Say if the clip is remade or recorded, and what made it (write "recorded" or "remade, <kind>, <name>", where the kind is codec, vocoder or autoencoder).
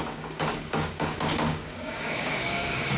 remade, codec, DAC